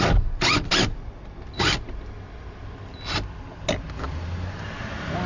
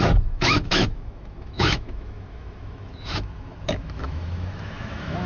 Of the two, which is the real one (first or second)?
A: first